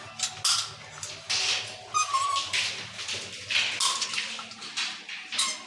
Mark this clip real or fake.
real